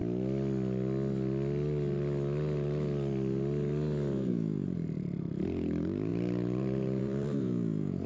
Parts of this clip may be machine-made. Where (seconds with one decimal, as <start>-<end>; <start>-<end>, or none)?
4.3-8.1